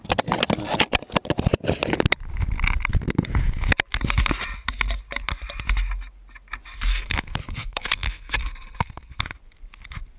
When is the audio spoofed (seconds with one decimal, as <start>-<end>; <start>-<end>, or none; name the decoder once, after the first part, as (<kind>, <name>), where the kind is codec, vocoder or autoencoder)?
6.9-9.2 (codec, SNAC)